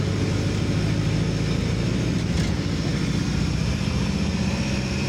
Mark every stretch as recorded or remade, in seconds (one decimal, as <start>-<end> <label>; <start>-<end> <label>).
0.0-2.9 recorded; 2.9-5.1 remade